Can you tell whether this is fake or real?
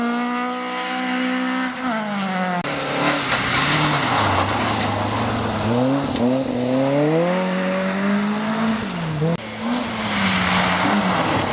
real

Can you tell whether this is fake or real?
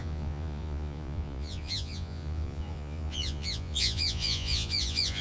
fake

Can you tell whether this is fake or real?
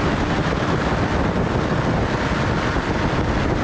real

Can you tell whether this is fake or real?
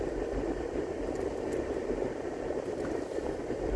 fake